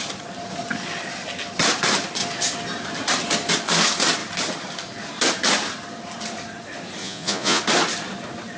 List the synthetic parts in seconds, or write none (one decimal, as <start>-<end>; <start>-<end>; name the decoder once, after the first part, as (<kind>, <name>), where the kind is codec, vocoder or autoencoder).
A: 7.0-7.6 (vocoder, Vocos)